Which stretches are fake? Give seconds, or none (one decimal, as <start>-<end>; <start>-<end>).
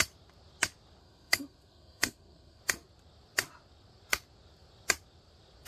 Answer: 1.0-2.6